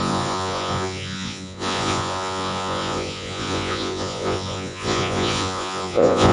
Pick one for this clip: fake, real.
fake